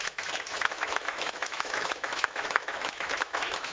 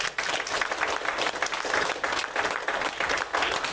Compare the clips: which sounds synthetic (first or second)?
first